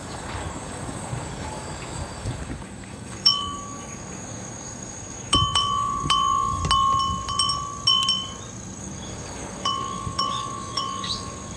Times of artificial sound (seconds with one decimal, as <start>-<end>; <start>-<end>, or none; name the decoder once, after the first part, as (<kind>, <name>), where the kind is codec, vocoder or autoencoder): 0.0-6.6 (codec, DAC); 8.8-11.6